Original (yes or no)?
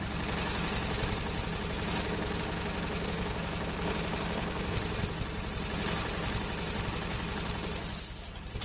yes